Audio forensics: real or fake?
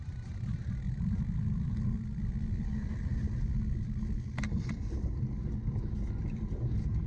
real